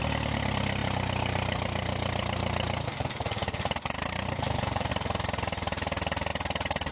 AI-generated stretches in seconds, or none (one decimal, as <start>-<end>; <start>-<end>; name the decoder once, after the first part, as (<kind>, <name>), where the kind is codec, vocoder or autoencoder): 0.8-4.9 (vocoder, BigVGAN v2)